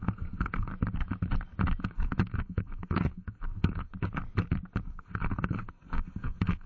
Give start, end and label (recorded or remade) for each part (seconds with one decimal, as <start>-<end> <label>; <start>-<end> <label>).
0.0-0.7 remade; 0.7-1.9 recorded; 1.9-3.9 remade; 3.9-4.8 recorded; 4.8-6.7 remade